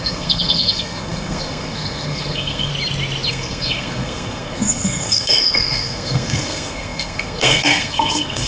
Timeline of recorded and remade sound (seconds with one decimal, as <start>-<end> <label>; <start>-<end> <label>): 0.0-2.7 remade; 2.7-3.3 recorded; 3.3-8.5 remade